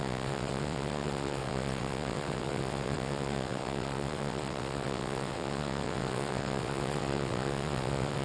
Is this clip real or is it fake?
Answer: fake